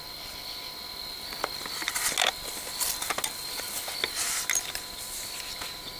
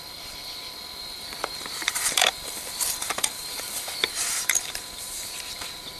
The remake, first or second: second